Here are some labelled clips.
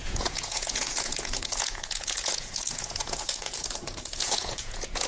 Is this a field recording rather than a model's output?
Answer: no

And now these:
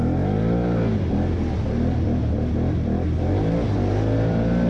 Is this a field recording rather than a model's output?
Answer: yes